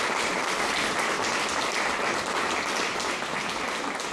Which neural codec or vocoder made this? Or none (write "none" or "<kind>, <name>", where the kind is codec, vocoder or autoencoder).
none